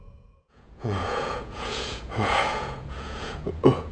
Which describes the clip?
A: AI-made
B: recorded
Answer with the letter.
A